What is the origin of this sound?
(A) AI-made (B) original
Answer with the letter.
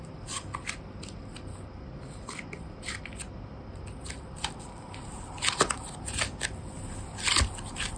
B